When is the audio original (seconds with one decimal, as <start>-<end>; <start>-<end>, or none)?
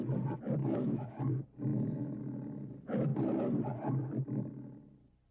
0.0-0.6; 1.2-1.7; 2.2-5.3